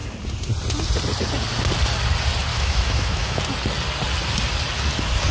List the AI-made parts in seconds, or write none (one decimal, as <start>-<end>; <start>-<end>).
2.5-3.4